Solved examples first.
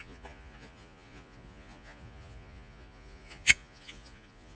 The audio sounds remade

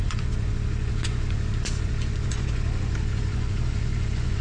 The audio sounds remade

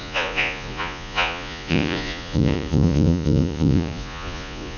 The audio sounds remade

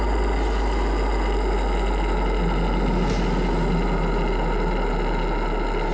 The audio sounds recorded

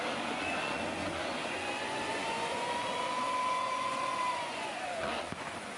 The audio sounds remade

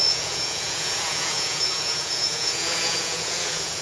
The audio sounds remade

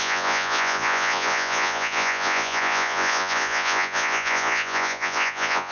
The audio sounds remade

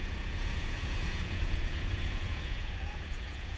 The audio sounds remade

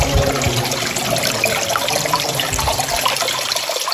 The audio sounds recorded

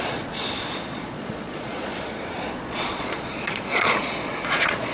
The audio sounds remade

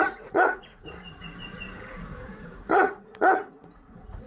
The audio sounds remade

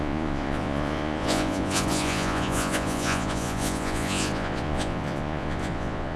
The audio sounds remade